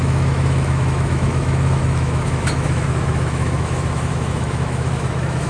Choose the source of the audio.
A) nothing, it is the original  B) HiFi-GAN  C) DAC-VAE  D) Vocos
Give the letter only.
C